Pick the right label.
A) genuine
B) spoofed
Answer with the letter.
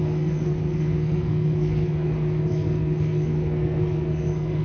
B